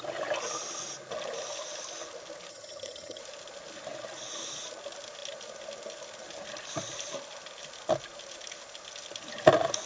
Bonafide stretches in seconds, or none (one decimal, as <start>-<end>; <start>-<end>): 0.0-2.5; 3.2-9.9